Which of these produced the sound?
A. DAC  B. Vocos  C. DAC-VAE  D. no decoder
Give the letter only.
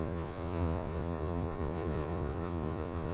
B